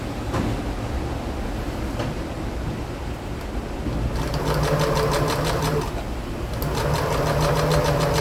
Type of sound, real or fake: real